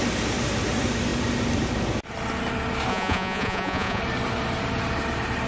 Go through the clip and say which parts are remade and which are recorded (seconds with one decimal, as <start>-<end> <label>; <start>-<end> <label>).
0.0-2.9 recorded; 2.9-4.0 remade; 4.0-5.5 recorded